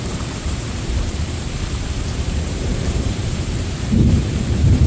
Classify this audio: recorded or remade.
remade